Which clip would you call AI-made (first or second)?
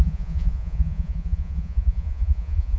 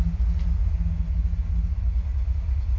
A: first